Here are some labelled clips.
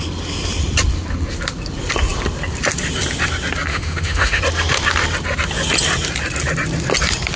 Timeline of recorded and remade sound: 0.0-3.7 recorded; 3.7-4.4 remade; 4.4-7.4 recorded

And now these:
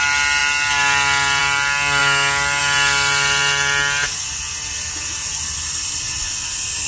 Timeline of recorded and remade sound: 0.0-6.9 recorded

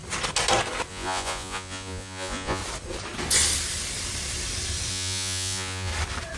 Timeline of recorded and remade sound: 0.0-0.9 recorded; 0.9-2.6 remade; 2.6-4.9 recorded; 4.9-5.9 remade; 5.9-6.4 recorded

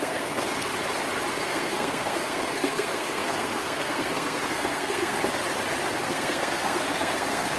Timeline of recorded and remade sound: 0.0-0.7 remade; 0.7-1.3 recorded; 1.3-5.2 remade; 5.2-5.9 recorded; 5.9-7.6 remade